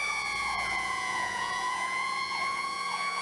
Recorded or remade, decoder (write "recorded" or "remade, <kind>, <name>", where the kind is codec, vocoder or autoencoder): remade, vocoder, Vocos